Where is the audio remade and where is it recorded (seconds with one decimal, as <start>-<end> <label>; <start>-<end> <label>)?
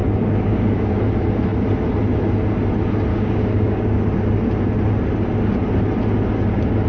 0.0-1.0 remade; 1.0-3.1 recorded; 3.1-4.0 remade; 4.0-6.9 recorded